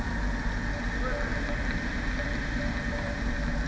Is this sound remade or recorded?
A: recorded